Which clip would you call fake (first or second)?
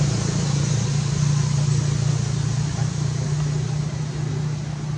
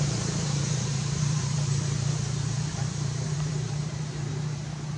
second